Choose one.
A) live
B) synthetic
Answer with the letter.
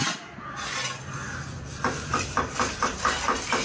A